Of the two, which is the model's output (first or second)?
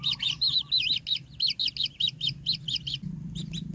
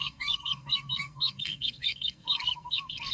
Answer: second